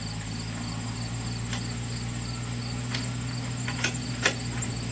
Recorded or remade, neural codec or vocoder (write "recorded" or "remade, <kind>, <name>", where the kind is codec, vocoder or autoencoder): recorded